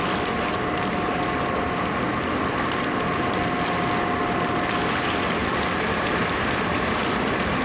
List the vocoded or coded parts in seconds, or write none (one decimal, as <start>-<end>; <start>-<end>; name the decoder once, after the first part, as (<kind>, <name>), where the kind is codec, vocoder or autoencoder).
none